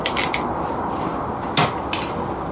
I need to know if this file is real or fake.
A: real